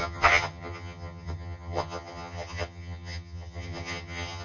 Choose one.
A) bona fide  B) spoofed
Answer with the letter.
B